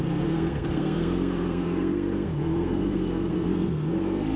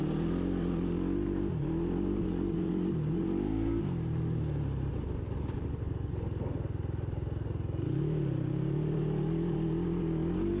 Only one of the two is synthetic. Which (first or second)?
first